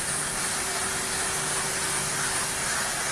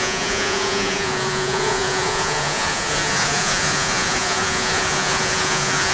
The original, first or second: first